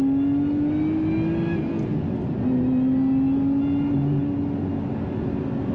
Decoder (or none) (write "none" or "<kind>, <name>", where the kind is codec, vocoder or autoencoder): none